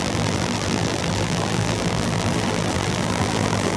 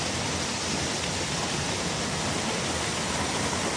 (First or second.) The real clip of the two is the second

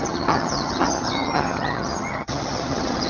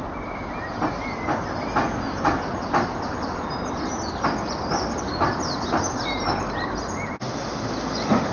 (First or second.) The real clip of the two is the second